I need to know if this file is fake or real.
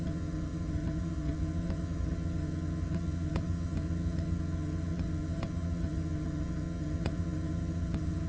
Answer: fake